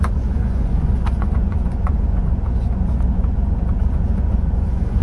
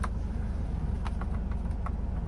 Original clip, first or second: second